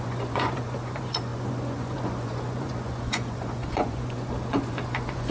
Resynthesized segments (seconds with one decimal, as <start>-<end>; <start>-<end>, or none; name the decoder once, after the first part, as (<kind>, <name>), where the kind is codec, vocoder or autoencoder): 0.0-5.3 (vocoder, Vocos)